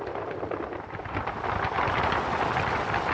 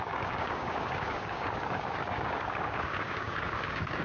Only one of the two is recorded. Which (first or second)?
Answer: first